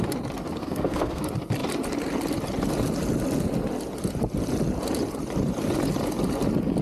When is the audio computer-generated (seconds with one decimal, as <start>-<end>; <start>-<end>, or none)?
0.6-1.2